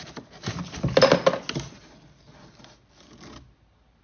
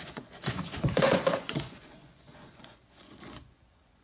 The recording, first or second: first